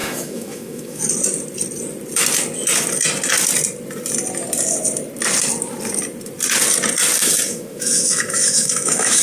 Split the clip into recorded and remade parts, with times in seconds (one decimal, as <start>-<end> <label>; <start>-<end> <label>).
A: 0.0-1.0 remade; 1.0-7.2 recorded; 7.2-9.2 remade